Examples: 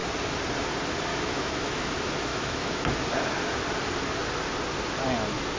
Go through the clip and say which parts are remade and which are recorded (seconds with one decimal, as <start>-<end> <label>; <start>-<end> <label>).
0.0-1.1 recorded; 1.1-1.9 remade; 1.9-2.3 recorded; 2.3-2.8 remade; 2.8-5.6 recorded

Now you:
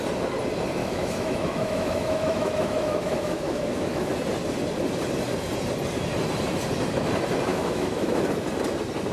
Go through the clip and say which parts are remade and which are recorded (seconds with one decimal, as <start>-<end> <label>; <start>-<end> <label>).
0.0-0.8 recorded; 0.8-4.1 remade; 4.1-7.5 recorded; 7.5-8.2 remade; 8.2-9.1 recorded

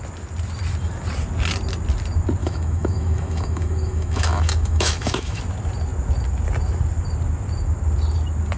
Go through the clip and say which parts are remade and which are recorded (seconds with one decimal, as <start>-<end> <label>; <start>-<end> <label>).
0.0-2.4 recorded; 2.4-5.4 remade; 5.4-8.6 recorded

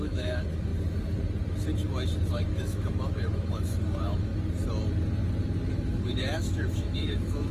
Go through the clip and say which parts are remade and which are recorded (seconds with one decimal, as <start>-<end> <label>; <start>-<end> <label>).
0.0-0.7 remade; 0.7-2.3 recorded; 2.3-4.3 remade; 4.3-5.7 recorded; 5.7-7.5 remade

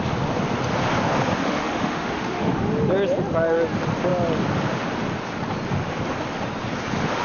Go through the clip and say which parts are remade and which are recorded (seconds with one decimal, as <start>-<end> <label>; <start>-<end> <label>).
0.0-1.4 recorded; 1.4-2.6 remade; 2.6-7.2 recorded

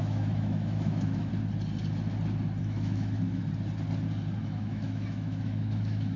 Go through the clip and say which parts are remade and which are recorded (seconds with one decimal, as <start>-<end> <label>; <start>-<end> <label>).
0.0-1.3 remade; 1.3-2.6 recorded; 2.6-3.4 remade; 3.4-4.4 recorded; 4.4-6.2 remade

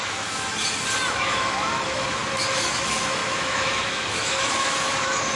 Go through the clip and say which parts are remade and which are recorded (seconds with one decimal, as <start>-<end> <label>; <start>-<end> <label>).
0.0-0.5 remade; 0.5-1.1 recorded; 1.1-5.4 remade

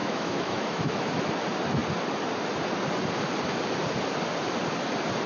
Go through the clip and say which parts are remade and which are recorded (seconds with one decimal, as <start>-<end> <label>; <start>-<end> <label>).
0.0-1.2 remade; 1.2-5.3 recorded